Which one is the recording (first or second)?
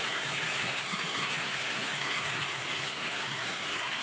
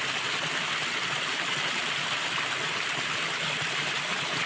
second